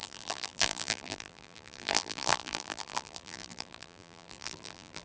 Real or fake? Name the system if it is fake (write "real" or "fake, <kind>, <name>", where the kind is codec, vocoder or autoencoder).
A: fake, vocoder, BigVGAN v2